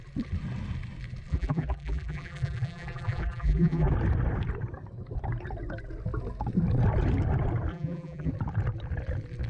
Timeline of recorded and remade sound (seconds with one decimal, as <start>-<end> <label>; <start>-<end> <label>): 0.0-1.3 recorded; 1.3-3.9 remade; 3.9-7.7 recorded; 7.7-8.3 remade; 8.3-9.5 recorded